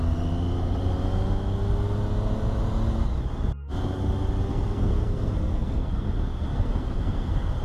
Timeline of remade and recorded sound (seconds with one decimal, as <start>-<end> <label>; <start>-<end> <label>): 0.0-4.5 recorded; 4.5-7.6 remade